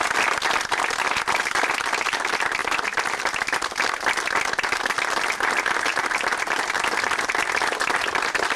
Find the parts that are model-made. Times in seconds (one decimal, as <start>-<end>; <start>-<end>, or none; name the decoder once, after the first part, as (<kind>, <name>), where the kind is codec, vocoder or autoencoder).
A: none